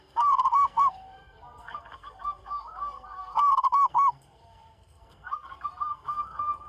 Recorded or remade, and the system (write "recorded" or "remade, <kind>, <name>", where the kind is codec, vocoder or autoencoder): remade, codec, SNAC